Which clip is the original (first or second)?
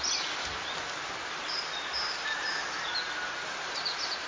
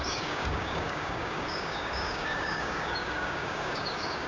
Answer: first